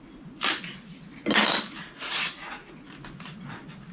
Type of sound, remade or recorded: recorded